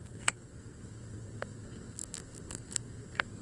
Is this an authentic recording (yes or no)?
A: no